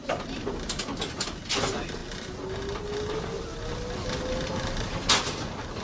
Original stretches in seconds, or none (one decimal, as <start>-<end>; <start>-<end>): 0.0-5.8